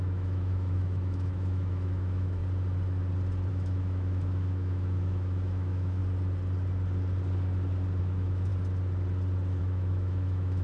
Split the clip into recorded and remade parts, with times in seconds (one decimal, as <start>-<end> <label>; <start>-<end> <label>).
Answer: 0.0-2.4 remade; 2.4-3.5 recorded; 3.5-6.0 remade; 6.0-8.0 recorded; 8.0-8.5 remade; 8.5-9.6 recorded; 9.6-10.6 remade